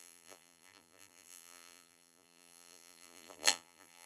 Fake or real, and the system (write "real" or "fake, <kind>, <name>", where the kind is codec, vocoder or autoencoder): fake, vocoder, BigVGAN v2